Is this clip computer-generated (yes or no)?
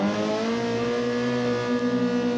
no